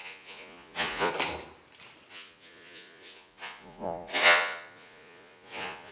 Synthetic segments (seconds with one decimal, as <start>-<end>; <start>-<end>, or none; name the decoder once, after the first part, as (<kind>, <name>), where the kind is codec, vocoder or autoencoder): 0.0-1.1 (vocoder, Vocos); 2.1-5.9